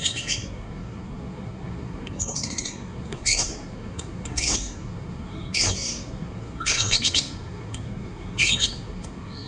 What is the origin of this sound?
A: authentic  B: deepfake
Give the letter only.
B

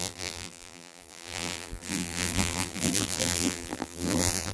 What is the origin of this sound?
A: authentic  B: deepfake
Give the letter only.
B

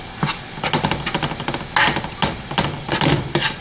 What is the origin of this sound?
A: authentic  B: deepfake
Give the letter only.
A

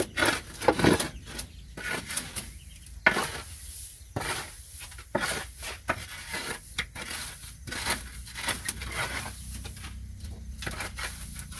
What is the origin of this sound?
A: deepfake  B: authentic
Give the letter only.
B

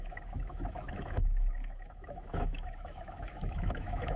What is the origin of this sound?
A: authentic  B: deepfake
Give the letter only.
B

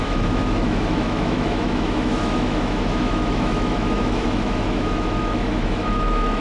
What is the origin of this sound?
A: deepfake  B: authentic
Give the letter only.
A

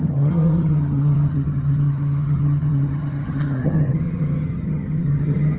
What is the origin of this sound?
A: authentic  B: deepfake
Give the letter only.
B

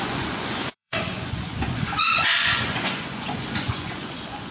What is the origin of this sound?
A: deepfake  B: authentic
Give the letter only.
A